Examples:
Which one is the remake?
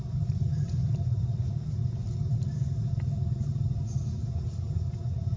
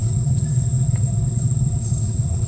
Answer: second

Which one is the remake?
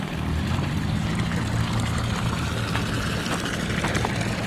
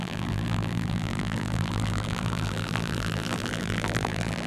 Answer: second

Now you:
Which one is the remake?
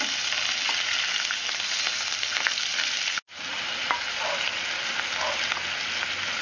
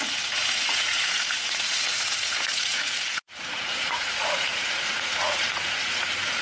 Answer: second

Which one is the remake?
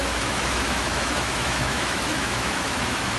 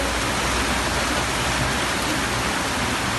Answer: first